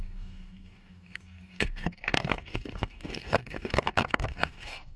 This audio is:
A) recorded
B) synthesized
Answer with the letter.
B